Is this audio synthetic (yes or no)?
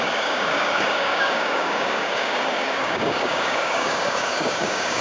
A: yes